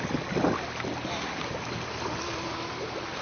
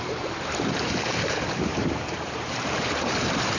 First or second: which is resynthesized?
second